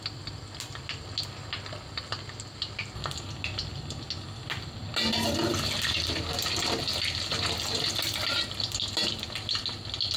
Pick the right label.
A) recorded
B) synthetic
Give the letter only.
A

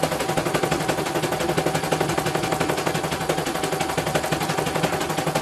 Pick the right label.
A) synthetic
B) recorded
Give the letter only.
B